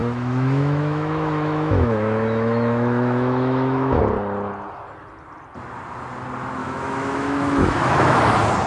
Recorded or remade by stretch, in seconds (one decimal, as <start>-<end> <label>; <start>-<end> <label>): 0.0-4.0 remade; 4.0-6.6 recorded; 6.6-8.2 remade; 8.2-8.7 recorded